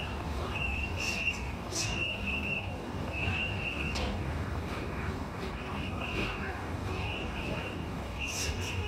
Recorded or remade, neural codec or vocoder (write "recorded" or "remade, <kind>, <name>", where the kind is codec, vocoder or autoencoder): remade, codec, DAC